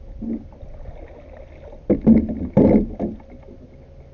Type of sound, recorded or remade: recorded